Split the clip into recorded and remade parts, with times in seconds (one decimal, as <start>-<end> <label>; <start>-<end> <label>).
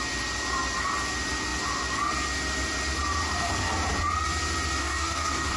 0.0-4.8 recorded; 4.8-5.6 remade